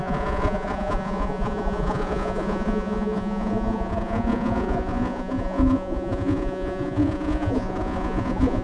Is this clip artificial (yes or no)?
yes